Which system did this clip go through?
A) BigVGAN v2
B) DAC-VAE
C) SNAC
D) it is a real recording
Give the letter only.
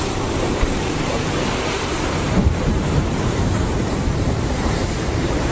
A